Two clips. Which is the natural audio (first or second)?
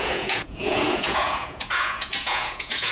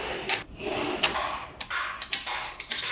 second